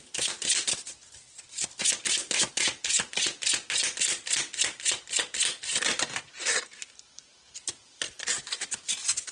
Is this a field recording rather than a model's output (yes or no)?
yes